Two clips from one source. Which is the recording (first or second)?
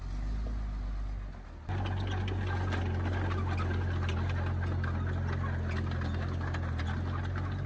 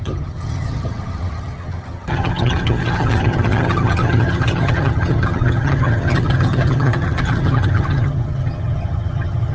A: first